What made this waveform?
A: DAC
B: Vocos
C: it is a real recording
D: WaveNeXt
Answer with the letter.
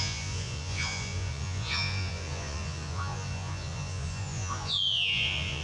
B